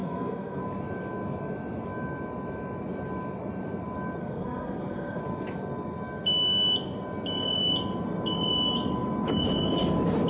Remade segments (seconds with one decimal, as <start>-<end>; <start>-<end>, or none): 0.0-0.6; 4.2-5.2